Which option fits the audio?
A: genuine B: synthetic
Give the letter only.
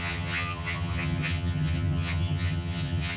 B